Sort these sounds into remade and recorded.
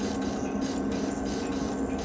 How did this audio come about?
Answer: recorded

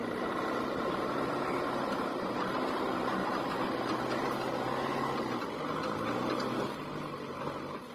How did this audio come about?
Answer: recorded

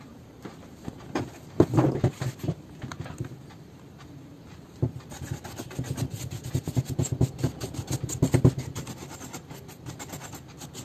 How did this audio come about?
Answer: recorded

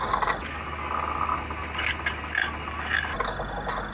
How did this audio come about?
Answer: recorded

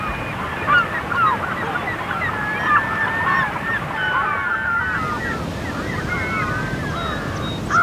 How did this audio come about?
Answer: recorded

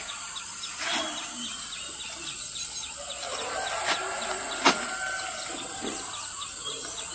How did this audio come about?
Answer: recorded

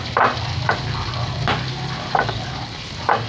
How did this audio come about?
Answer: recorded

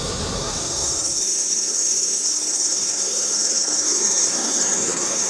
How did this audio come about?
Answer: remade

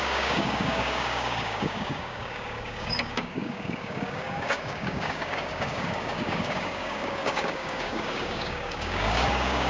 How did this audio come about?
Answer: remade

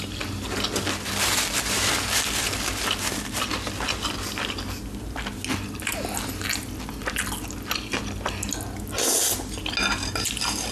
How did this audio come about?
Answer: recorded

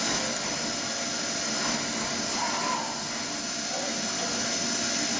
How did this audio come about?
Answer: recorded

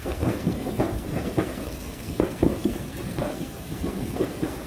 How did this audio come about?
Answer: remade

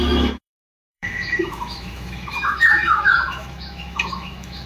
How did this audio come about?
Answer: remade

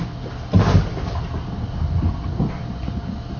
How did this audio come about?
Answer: recorded